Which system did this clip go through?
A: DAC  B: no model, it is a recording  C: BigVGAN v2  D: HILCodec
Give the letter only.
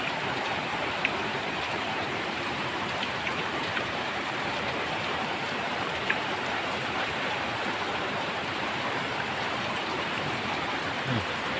C